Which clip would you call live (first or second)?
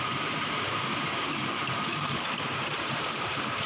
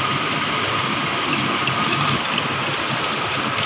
second